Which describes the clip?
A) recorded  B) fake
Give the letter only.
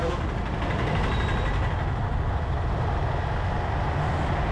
A